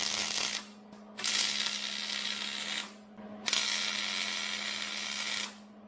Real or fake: real